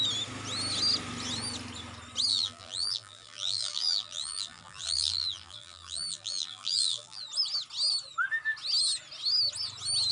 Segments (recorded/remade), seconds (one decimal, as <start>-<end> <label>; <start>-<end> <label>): 0.0-2.3 recorded; 2.3-7.2 remade; 7.2-10.1 recorded